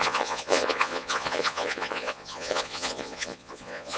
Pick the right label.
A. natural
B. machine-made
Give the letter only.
B